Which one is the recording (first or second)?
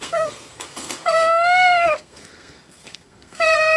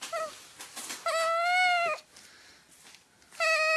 second